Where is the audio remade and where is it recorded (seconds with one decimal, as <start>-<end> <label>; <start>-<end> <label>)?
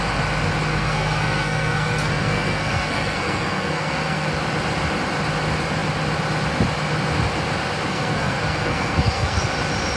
0.0-0.7 recorded; 0.7-4.3 remade; 4.3-7.9 recorded; 7.9-9.4 remade; 9.4-10.0 recorded